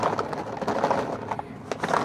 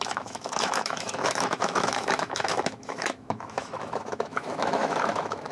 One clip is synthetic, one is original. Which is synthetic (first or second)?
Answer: second